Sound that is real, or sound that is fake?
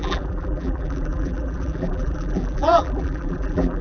fake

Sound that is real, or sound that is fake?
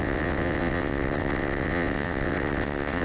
fake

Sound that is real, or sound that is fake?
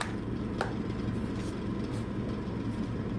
real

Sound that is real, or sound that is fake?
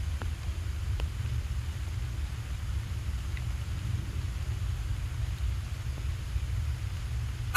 real